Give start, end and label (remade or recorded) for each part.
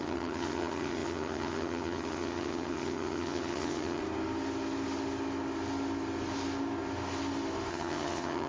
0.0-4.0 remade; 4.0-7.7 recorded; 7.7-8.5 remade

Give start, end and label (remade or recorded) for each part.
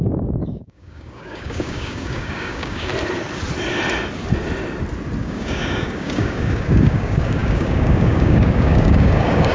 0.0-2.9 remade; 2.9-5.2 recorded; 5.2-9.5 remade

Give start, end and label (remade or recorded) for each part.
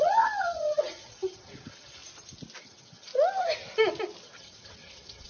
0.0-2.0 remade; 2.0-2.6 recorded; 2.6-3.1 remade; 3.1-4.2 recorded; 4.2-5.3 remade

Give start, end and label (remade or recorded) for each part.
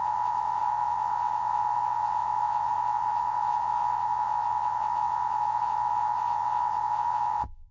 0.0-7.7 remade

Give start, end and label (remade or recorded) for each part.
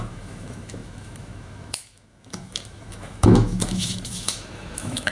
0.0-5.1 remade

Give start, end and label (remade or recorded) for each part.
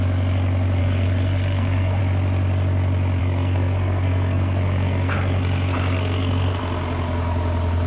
0.0-0.8 recorded; 0.8-2.0 remade; 2.0-3.2 recorded; 3.2-6.6 remade; 6.6-7.9 recorded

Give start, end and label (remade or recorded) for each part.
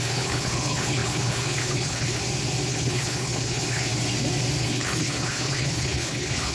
0.0-2.2 remade; 2.2-2.7 recorded; 2.7-3.9 remade; 3.9-4.6 recorded; 4.6-6.5 remade